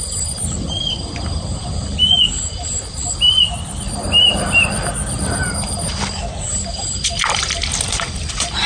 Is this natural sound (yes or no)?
no